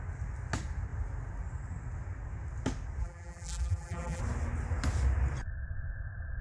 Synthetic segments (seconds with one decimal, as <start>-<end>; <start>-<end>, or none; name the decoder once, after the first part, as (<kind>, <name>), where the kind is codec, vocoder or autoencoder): 3.0-4.2 (vocoder, BigVGAN v2)